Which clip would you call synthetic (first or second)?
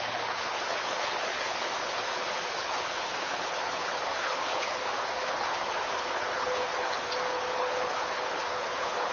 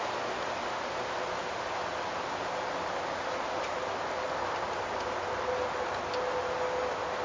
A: first